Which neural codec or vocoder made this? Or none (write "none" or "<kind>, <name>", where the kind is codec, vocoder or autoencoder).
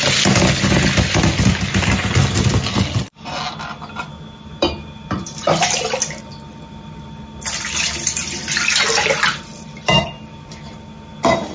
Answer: none